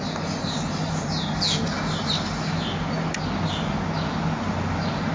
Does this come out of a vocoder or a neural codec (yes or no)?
no